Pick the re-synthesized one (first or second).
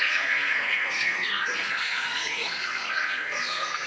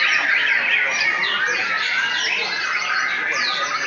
first